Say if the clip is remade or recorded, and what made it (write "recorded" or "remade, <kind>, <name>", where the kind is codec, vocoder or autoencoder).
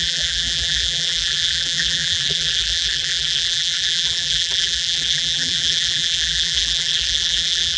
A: remade, vocoder, BigVGAN v2